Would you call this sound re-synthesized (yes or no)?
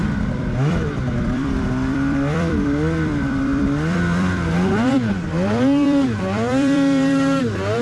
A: yes